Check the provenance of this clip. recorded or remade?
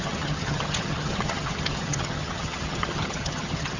remade